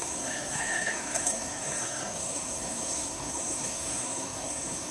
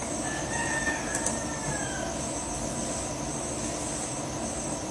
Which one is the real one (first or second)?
second